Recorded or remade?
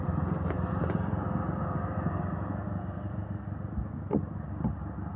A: recorded